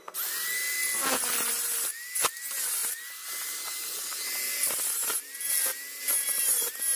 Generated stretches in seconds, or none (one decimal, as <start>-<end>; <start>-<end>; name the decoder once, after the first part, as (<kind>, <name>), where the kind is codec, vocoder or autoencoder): none

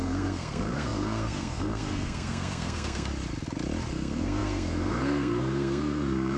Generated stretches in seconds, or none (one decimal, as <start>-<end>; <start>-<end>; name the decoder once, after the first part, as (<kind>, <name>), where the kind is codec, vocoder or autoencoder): 0.0-3.1 (codec, SNAC); 3.9-6.4

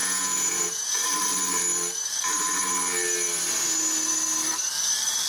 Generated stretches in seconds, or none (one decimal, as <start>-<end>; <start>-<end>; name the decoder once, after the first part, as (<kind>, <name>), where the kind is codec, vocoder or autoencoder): 0.0-0.9 (vocoder, Vocos)

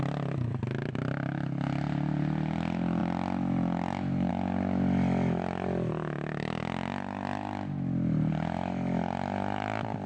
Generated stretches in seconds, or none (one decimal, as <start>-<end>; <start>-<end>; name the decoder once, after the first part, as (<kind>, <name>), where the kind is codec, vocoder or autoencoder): none